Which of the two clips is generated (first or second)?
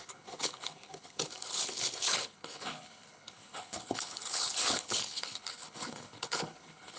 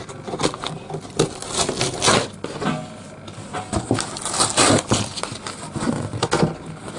first